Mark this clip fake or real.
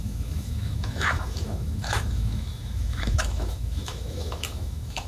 fake